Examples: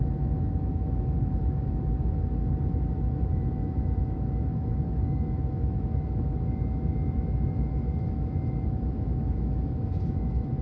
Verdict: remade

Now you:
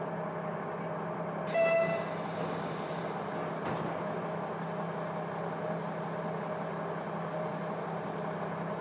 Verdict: recorded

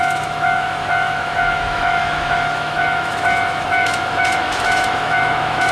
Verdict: remade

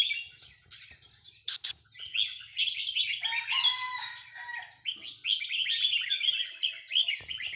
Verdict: recorded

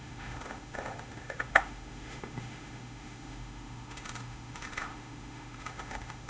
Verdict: remade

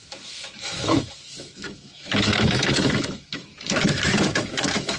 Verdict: remade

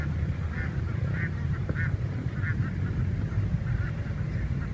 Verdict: recorded